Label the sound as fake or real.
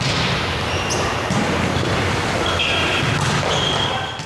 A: real